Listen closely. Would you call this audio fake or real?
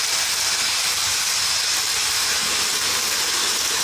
real